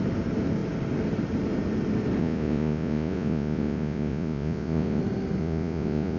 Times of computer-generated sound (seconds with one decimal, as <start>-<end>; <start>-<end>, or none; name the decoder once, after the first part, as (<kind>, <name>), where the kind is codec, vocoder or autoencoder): 2.2-5.0 (vocoder, Vocos); 5.4-6.2